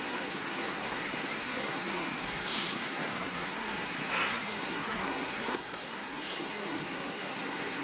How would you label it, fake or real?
fake